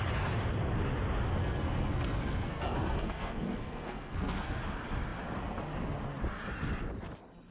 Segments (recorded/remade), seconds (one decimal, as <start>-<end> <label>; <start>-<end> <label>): 0.0-1.4 recorded; 1.4-4.6 remade; 4.6-7.5 recorded